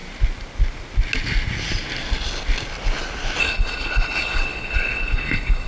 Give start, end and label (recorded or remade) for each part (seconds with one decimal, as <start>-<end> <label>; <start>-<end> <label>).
0.0-3.4 recorded; 3.4-5.7 remade